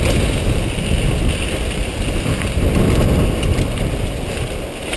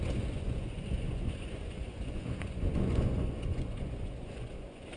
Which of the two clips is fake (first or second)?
second